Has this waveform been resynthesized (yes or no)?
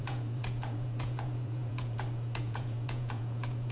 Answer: yes